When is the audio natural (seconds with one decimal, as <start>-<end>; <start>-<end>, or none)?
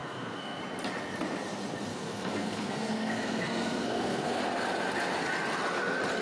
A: 0.6-1.9; 4.4-6.2